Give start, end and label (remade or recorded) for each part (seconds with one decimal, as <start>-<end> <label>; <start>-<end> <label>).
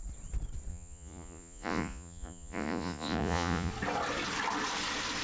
0.0-0.7 recorded; 0.7-3.7 remade; 3.7-5.2 recorded